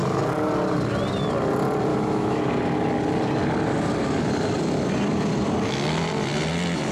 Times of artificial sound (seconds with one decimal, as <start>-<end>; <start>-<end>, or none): 1.9-2.4